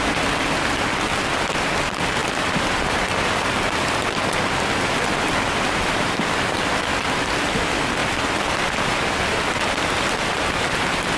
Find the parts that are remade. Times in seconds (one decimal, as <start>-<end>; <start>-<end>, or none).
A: 1.1-1.7; 2.2-6.2; 8.0-8.7